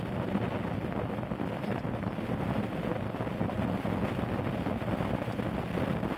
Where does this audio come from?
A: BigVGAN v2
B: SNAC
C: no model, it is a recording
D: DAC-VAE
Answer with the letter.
C